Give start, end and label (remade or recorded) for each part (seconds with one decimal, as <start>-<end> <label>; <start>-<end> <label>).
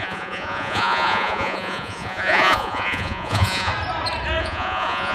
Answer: 0.0-3.7 remade; 3.7-4.4 recorded; 4.4-5.1 remade